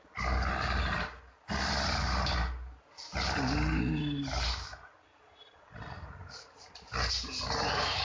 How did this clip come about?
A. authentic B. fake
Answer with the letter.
A